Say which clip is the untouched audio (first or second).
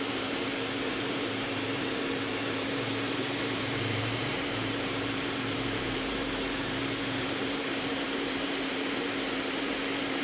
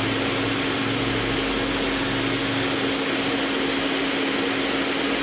second